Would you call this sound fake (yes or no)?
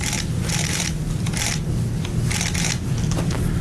no